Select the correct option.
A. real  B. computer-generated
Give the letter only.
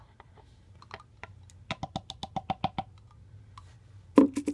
A